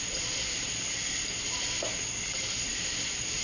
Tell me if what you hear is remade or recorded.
recorded